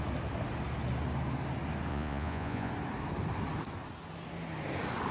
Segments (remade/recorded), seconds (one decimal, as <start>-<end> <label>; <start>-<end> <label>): 0.0-1.9 recorded; 1.9-2.7 remade; 2.7-5.1 recorded